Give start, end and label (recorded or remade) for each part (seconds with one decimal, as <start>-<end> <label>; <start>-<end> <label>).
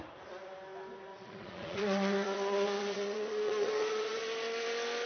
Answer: 0.0-1.1 recorded; 1.1-4.2 remade; 4.2-5.1 recorded